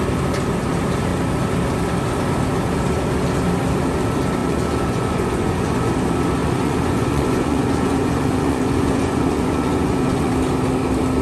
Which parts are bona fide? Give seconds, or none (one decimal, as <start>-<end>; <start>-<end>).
0.0-4.4; 5.9-6.4; 10.3-11.2